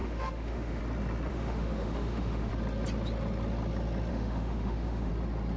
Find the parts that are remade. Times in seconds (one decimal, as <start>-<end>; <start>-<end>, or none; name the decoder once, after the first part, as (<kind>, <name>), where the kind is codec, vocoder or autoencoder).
0.0-0.8 (autoencoder, DAC-VAE); 1.3-2.5; 4.1-5.1